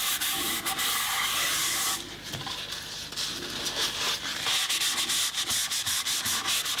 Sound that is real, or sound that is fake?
real